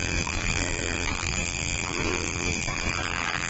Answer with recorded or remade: remade